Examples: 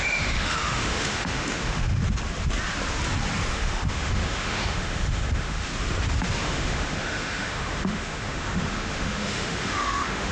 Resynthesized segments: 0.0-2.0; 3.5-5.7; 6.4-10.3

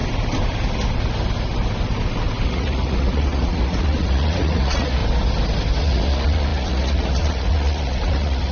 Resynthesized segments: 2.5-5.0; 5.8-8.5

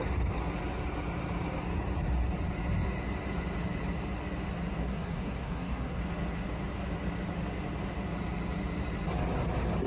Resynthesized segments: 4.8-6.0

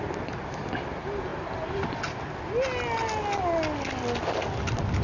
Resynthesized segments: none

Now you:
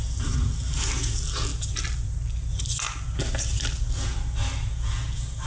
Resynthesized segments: 1.5-2.5

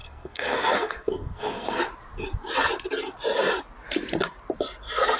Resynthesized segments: 0.0-1.8